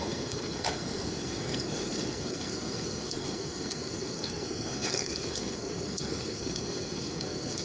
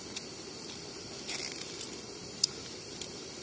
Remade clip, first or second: first